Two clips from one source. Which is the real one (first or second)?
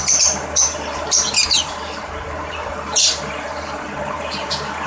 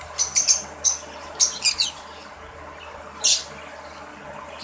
second